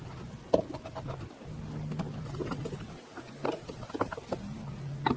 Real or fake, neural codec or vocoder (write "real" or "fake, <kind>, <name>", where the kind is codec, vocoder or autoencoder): real